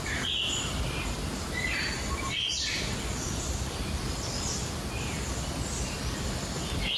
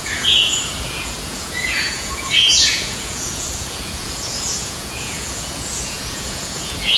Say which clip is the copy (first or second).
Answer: second